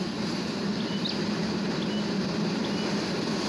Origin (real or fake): real